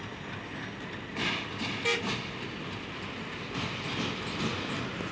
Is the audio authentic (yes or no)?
yes